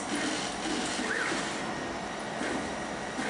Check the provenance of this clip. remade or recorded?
recorded